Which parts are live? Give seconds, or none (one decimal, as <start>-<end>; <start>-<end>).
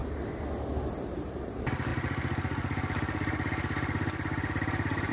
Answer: 0.0-5.1